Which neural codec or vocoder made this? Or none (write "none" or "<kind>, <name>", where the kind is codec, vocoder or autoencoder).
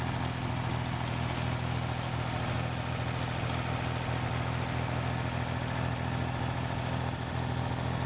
none